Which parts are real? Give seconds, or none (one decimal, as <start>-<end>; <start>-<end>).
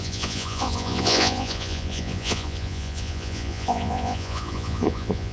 none